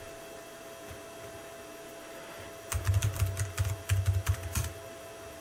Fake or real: real